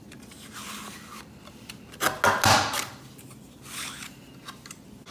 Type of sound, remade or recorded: recorded